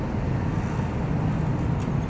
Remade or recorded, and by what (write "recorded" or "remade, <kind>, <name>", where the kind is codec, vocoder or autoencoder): recorded